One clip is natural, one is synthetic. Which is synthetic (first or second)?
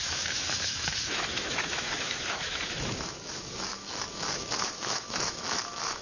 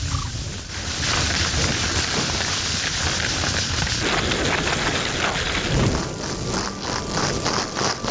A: first